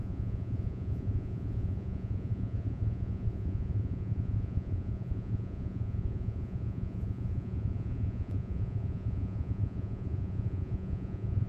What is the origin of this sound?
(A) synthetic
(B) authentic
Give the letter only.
A